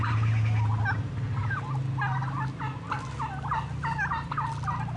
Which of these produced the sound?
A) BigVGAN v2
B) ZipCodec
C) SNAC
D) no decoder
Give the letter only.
D